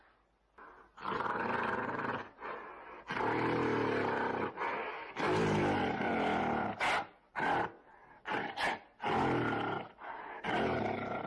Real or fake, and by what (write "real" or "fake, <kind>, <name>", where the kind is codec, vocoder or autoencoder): real